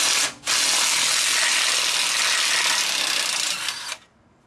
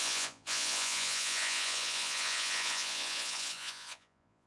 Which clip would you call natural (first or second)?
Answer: first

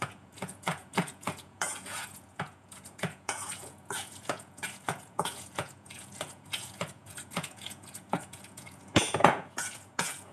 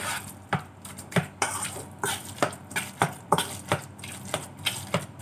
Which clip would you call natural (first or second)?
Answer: second